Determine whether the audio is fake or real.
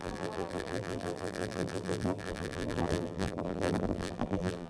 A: fake